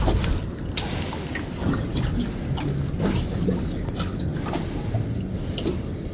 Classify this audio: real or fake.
real